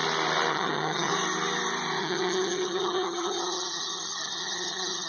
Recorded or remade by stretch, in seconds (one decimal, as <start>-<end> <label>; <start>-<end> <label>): 0.0-0.5 recorded; 0.5-1.1 remade; 1.1-2.0 recorded; 2.0-5.1 remade

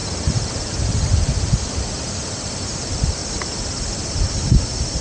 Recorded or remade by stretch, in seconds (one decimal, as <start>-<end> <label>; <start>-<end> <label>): 0.0-3.2 remade; 3.2-3.9 recorded; 3.9-5.0 remade

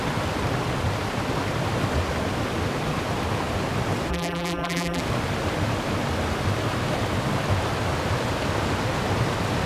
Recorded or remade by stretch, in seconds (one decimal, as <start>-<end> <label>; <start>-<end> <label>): 0.0-4.1 recorded; 4.1-5.0 remade; 5.0-9.7 recorded

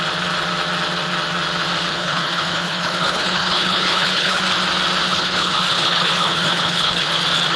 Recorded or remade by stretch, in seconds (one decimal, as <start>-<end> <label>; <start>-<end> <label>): 0.0-1.9 recorded; 1.9-4.4 remade; 4.4-5.1 recorded; 5.1-7.1 remade; 7.1-7.6 recorded